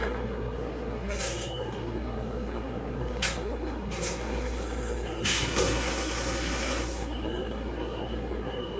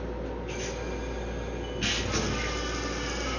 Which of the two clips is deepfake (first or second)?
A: first